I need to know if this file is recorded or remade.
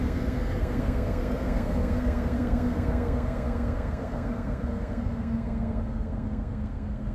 remade